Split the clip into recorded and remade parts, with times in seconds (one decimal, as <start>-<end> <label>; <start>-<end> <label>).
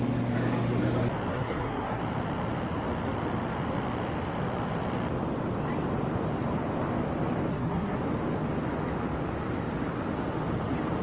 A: 0.0-1.3 recorded; 1.3-2.0 remade; 2.0-7.5 recorded; 7.5-8.0 remade; 8.0-11.0 recorded